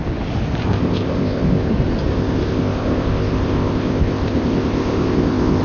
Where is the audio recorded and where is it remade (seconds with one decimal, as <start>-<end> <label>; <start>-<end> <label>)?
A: 0.0-0.6 recorded; 0.6-1.7 remade; 1.7-2.1 recorded; 2.1-5.6 remade